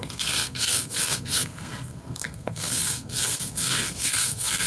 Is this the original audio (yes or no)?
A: no